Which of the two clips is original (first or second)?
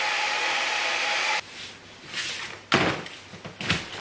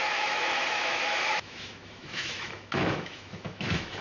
first